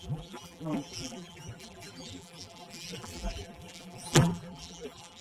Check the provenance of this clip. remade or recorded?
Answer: remade